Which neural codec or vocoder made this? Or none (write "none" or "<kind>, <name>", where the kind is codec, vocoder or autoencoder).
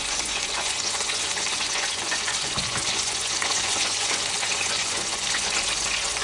vocoder, Vocos